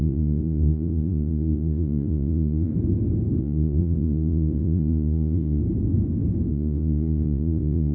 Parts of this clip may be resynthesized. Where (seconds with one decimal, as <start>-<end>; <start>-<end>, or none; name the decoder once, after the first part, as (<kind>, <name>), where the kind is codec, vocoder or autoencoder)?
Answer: 0.0-2.7 (vocoder, Vocos); 3.4-5.6; 6.5-7.9